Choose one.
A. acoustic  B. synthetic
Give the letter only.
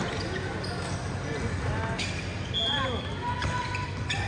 A